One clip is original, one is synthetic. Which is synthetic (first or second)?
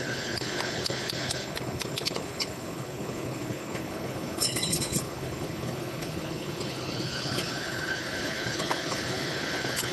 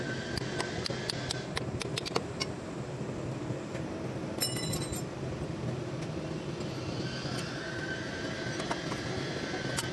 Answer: first